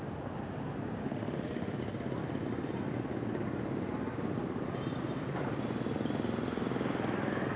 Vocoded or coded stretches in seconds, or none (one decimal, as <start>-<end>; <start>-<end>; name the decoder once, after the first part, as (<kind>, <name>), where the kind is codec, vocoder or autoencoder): 1.0-1.8 (autoencoder, DAC-VAE)